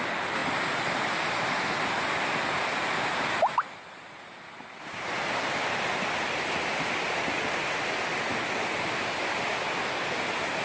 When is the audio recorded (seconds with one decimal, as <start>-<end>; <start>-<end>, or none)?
0.0-10.6

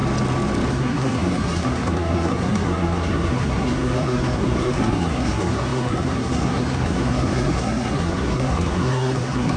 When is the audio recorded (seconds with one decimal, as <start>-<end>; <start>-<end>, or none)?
0.0-0.7

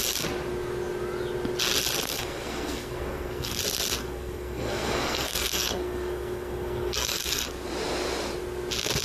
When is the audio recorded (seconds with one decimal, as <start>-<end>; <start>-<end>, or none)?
0.0-2.1; 3.6-4.0; 7.5-9.0

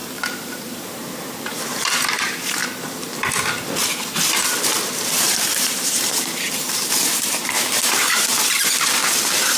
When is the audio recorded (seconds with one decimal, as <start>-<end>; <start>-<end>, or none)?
2.6-4.8; 9.0-9.6